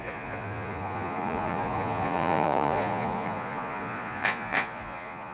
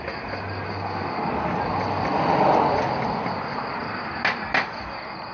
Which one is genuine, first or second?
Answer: second